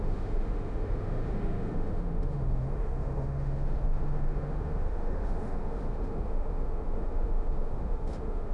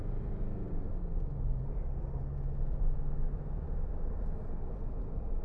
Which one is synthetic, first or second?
first